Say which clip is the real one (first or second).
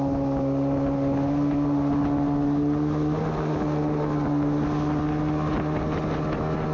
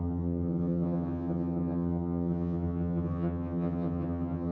first